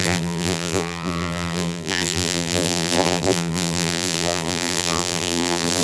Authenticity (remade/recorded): remade